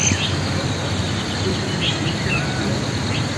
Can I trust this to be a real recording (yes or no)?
yes